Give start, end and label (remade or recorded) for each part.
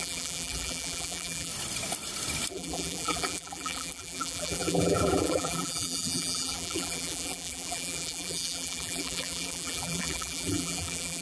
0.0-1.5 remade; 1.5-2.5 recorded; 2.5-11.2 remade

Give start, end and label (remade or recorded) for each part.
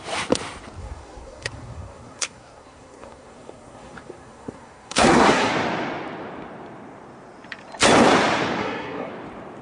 0.0-0.8 recorded; 0.8-5.5 remade; 5.5-8.6 recorded; 8.6-9.1 remade; 9.1-9.6 recorded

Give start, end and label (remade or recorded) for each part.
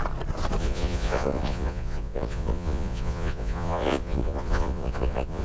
0.0-0.6 recorded; 0.6-5.4 remade